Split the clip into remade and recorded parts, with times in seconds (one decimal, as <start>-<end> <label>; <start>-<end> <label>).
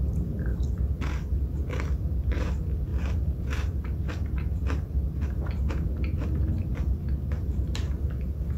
0.0-8.6 recorded